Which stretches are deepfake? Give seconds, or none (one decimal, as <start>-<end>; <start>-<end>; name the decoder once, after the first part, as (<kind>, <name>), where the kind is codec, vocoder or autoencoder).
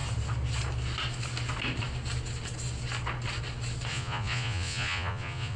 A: 3.9-5.6 (vocoder, Vocos)